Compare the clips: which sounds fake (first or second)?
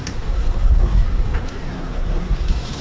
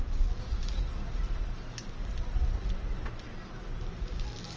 first